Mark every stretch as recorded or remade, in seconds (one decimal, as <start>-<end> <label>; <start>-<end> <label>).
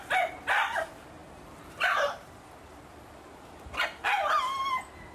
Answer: 0.0-5.1 recorded